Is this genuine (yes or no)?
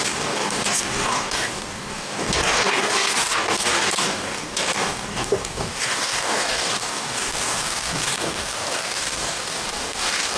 no